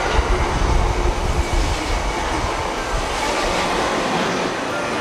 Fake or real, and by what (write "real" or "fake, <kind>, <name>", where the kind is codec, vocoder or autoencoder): real